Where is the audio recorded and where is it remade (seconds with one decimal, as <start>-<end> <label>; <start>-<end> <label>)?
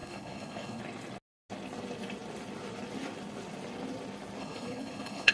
0.0-0.8 remade; 0.8-4.4 recorded; 4.4-5.3 remade